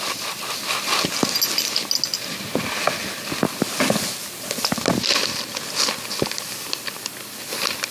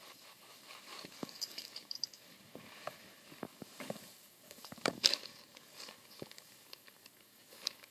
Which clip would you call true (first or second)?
first